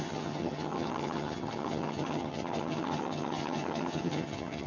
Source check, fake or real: fake